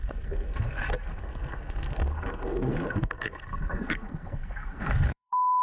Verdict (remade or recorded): remade